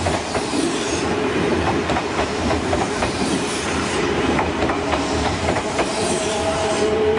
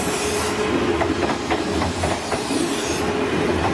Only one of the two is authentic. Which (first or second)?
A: second